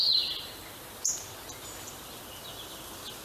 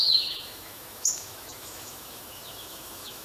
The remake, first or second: second